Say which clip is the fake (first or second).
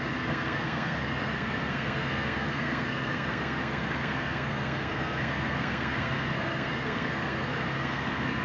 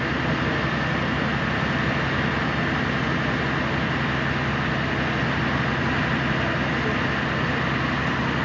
first